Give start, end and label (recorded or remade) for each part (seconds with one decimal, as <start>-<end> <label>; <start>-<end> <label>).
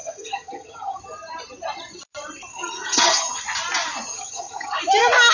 0.0-1.0 remade; 1.0-2.5 recorded; 2.5-3.4 remade; 3.4-4.1 recorded; 4.1-4.8 remade; 4.8-5.3 recorded